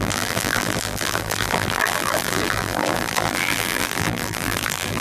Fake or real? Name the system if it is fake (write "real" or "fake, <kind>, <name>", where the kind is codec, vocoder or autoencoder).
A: fake, vocoder, BigVGAN v2